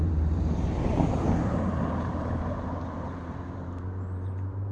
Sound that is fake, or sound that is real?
fake